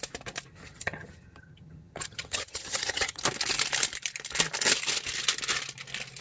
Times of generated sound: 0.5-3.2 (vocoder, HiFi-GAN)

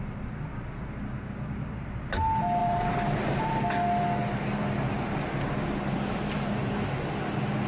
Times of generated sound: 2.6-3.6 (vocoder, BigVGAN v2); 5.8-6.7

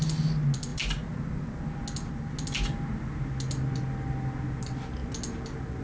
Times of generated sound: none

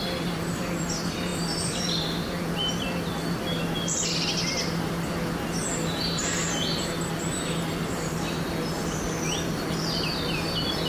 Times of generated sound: none

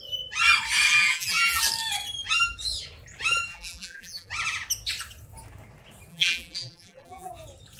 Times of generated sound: 0.9-1.6 (vocoder, BigVGAN v2); 3.5-4.3; 6.1-7.3

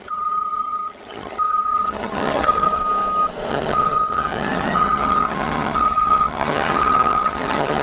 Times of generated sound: 0.0-2.8 (vocoder, HiFi-GAN); 3.5-7.8

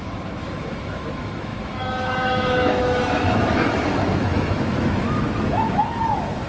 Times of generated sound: 0.0-6.5 (autoencoder, DAC-VAE)